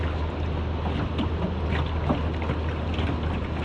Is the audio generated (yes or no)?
no